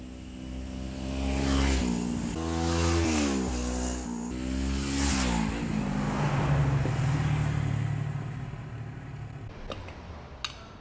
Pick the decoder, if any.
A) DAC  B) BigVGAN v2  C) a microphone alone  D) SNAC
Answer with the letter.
C